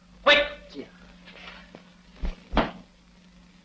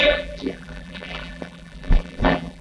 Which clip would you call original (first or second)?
first